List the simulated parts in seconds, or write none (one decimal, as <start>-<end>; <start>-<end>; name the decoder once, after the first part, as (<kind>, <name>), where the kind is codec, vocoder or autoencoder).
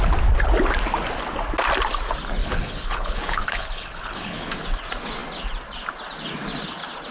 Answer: 2.4-4.5 (codec, HILCodec)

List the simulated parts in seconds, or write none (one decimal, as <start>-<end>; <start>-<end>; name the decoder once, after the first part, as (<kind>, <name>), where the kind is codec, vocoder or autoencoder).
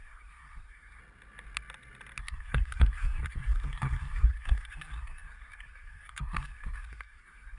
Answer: 0.0-1.0 (codec, SNAC); 2.2-7.6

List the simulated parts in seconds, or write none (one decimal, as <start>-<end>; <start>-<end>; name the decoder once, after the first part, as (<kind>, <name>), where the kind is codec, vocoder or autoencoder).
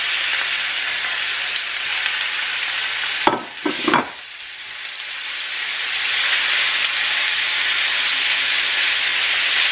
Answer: none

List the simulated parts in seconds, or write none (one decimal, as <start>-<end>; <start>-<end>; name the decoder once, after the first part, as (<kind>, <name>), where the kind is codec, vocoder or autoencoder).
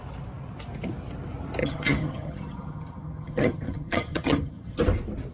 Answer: 1.6-4.8 (vocoder, HiFi-GAN)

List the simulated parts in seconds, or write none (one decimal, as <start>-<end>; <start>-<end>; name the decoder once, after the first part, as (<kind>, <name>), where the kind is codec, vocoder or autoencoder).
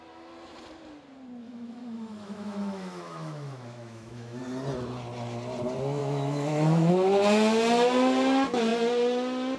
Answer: 1.4-4.4 (autoencoder, DAC-VAE); 6.0-6.9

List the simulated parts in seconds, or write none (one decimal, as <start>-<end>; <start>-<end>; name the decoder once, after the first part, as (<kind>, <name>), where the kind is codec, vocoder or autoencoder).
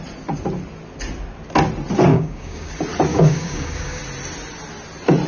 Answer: 2.1-2.7 (codec, DAC); 3.1-4.0